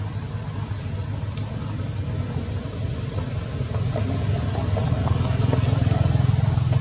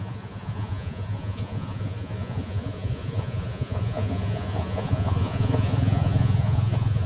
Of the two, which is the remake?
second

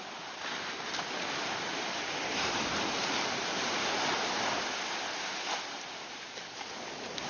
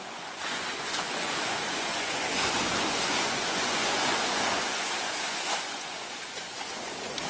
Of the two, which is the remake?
second